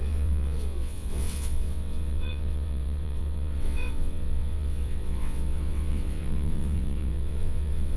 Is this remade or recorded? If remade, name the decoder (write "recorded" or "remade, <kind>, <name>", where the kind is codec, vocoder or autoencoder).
remade, vocoder, WaveNeXt